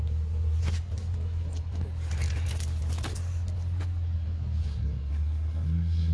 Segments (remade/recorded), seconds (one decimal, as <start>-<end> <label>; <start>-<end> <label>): 0.0-4.6 recorded; 4.6-6.1 remade